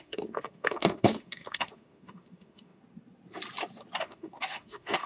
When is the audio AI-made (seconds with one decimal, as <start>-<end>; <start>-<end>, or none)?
0.0-2.8; 4.0-5.1